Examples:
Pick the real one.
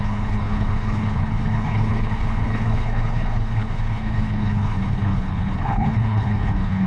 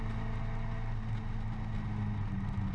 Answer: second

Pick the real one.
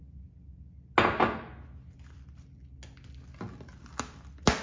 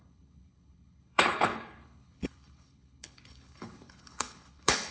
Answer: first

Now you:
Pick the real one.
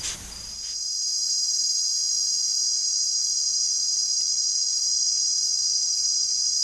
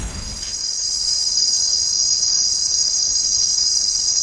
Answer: first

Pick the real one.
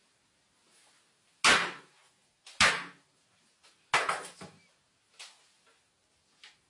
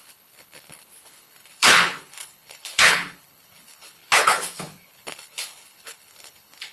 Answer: first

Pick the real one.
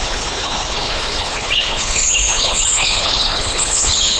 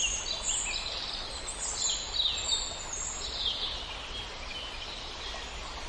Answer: second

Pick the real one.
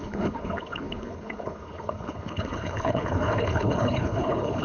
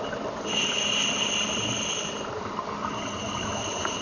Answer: second